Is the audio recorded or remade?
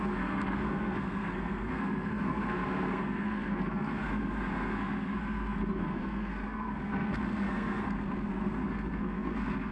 remade